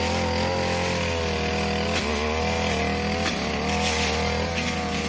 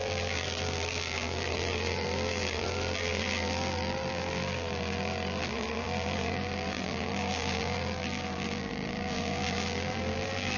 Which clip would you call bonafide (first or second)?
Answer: first